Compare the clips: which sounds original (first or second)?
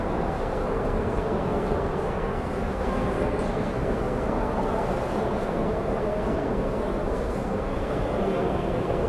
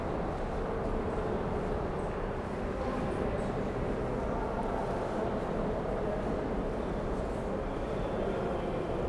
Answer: second